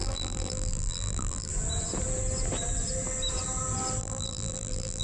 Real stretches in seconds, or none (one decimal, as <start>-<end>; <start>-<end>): 1.5-4.0